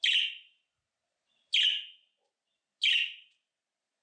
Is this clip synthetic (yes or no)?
no